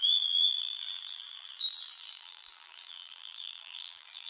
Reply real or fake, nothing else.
fake